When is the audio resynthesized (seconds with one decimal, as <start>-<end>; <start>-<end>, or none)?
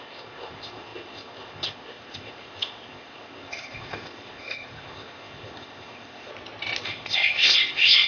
0.0-6.3; 6.8-8.1